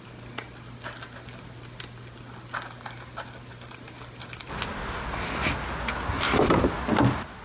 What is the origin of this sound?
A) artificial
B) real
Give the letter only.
B